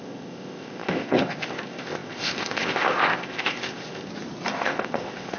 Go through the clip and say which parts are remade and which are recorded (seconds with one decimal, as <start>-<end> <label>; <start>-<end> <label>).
0.0-4.1 remade; 4.1-4.6 recorded; 4.6-5.4 remade